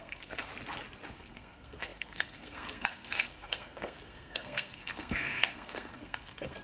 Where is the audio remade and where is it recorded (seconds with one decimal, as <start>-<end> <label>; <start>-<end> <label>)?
0.0-0.5 remade; 0.5-1.1 recorded; 1.1-6.6 remade